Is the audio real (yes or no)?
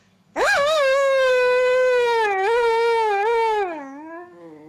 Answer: no